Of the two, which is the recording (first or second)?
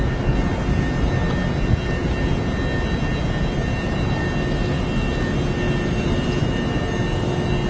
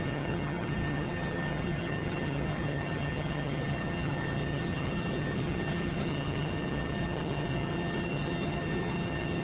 first